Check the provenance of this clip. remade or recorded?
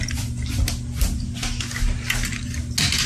recorded